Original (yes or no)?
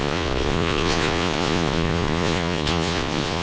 no